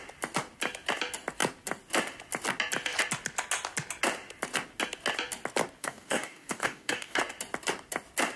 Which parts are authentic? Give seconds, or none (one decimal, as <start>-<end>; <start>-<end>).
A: 0.0-5.8; 7.2-8.4